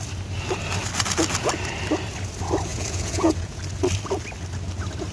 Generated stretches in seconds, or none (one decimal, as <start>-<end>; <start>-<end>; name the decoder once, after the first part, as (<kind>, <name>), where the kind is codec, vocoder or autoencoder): 2.7-3.6 (vocoder, Vocos)